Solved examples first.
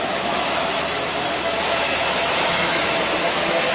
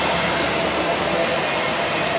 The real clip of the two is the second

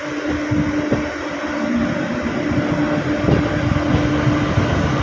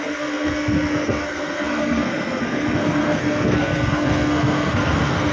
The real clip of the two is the first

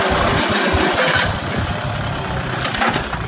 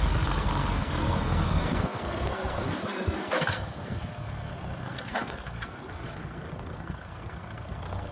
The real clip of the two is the first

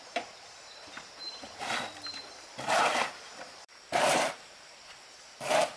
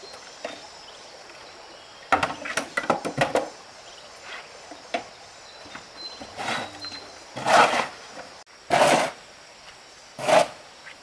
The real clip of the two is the second